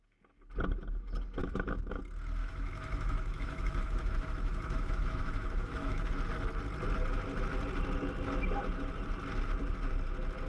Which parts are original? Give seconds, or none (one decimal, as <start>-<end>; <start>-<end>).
0.0-1.4; 2.0-2.4; 6.1-10.5